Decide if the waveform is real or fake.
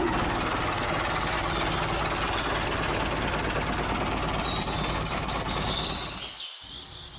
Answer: real